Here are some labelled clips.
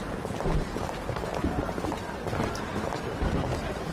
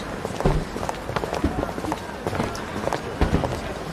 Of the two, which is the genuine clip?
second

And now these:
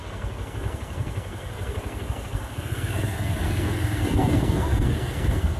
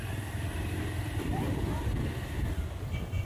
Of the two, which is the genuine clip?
second